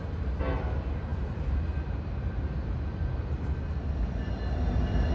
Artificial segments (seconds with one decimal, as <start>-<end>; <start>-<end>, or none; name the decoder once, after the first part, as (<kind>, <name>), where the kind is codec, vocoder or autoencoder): none